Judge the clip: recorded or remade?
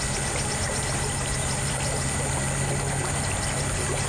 recorded